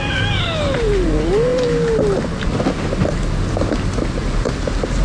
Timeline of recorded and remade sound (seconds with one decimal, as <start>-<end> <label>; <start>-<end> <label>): 0.0-5.0 recorded